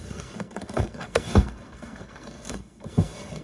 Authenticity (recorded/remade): remade